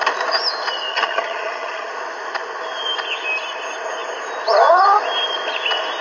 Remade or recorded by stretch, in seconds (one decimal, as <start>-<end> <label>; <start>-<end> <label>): 0.0-0.9 recorded; 0.9-1.9 remade; 1.9-6.0 recorded